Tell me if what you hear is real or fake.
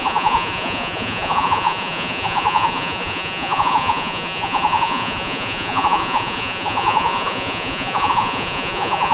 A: fake